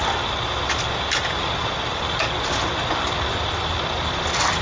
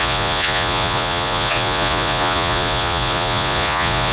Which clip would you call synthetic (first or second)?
second